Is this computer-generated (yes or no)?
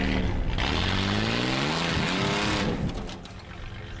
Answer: no